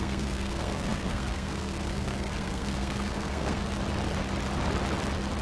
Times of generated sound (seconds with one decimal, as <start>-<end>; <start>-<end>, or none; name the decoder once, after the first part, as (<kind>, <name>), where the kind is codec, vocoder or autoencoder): 0.0-3.7 (codec, SNAC)